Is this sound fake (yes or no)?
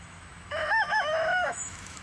yes